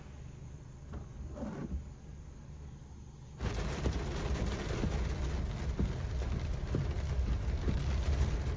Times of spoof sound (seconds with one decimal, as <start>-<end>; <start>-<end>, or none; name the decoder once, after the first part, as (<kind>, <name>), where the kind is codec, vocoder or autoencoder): none